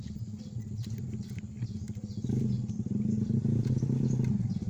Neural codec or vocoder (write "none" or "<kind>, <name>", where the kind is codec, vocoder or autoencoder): none